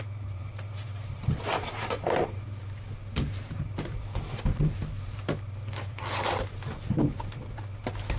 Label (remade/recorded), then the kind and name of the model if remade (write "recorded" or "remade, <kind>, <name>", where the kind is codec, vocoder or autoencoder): remade, vocoder, BigVGAN v2